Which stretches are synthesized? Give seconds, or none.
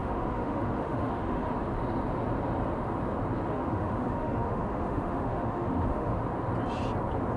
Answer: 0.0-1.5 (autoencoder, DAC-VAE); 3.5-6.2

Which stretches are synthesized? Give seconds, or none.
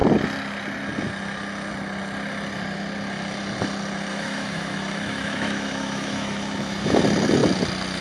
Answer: 4.1-7.0 (autoencoder, DAC-VAE)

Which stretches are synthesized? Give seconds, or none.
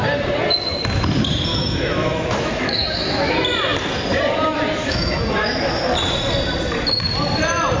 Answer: 1.5-3.3 (autoencoder, DAC-VAE); 4.8-5.5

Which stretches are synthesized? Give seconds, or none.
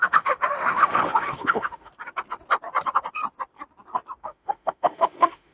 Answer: 0.0-1.9 (autoencoder, DAC-VAE); 4.2-5.5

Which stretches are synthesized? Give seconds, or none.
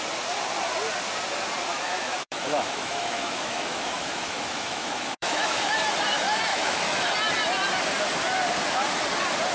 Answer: 1.7-5.7 (autoencoder, DAC-VAE); 6.5-7.1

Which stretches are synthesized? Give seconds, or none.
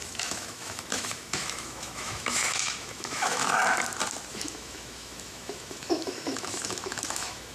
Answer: 0.0-3.6 (autoencoder, DAC-VAE); 4.3-7.5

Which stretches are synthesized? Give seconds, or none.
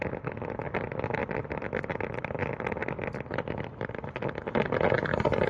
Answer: none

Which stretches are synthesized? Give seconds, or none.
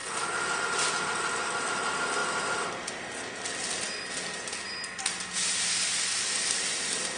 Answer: none